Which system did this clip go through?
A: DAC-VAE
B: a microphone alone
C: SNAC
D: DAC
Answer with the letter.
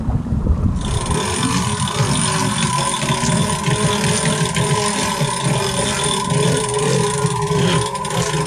B